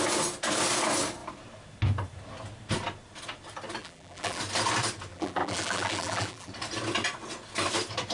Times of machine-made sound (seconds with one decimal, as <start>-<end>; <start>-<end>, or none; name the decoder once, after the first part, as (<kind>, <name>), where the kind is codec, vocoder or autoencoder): 3.8-4.4 (vocoder, BigVGAN v2); 5.1-6.5